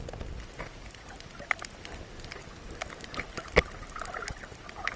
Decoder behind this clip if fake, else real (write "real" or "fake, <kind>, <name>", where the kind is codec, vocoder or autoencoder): real